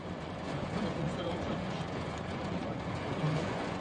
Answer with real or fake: fake